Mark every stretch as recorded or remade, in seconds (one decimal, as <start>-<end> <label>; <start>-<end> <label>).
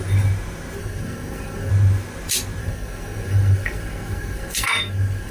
0.0-0.8 recorded; 0.8-1.7 remade; 1.7-2.6 recorded; 2.6-5.3 remade